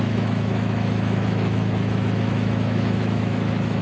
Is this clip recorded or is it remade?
remade